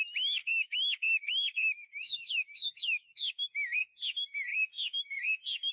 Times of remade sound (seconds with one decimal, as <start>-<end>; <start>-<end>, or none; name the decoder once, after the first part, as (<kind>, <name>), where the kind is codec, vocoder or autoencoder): 0.4-3.8 (codec, DAC); 4.5-5.2